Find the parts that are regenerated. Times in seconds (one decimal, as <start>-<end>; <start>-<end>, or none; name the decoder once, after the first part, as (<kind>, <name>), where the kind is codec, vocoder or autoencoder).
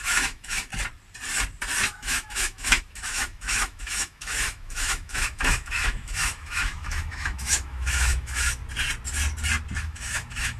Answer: 0.0-0.7 (autoencoder, DAC-VAE); 1.8-8.6; 9.8-10.6